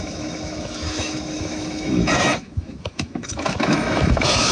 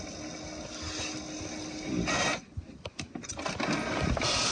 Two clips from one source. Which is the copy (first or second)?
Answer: first